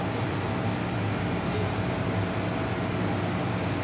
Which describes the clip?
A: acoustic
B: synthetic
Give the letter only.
A